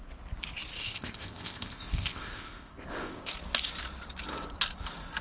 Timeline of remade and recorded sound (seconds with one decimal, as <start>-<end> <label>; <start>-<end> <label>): 0.0-0.8 recorded; 0.8-3.3 remade; 3.3-5.2 recorded